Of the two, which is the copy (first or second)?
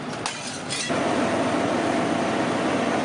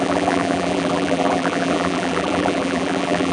second